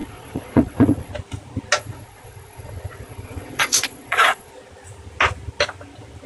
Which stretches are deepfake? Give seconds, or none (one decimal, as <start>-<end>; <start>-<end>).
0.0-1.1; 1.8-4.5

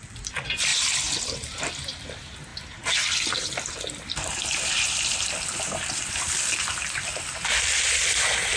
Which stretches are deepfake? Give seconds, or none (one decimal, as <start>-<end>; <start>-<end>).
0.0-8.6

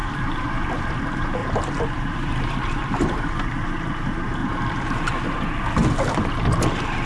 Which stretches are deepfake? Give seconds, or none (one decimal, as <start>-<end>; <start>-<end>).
0.0-0.5; 1.4-3.2; 4.4-4.9